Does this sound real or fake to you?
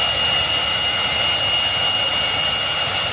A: real